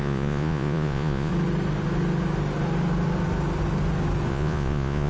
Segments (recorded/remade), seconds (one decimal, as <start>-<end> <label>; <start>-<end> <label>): 0.0-1.3 remade; 1.3-4.3 recorded; 4.3-5.1 remade